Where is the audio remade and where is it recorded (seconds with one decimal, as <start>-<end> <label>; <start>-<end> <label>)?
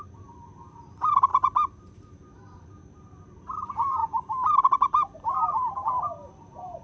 0.0-6.8 remade